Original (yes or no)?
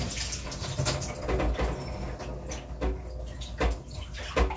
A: yes